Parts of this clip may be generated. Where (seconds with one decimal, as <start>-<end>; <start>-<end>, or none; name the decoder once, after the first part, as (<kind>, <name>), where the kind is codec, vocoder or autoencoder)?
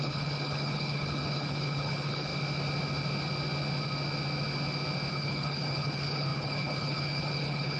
0.0-2.3 (codec, HILCodec); 5.1-7.8